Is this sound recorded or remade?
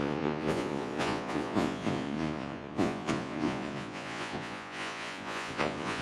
remade